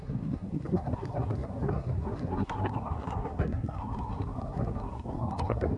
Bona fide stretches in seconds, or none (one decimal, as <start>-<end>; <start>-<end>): none